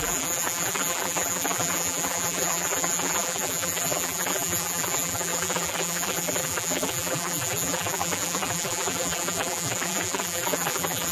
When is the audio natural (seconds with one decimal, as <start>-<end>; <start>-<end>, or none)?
none